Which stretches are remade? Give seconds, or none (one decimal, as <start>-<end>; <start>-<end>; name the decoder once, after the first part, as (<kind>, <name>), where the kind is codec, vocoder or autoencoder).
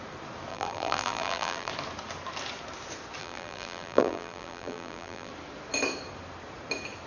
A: 0.5-1.7 (vocoder, BigVGAN v2); 3.2-5.3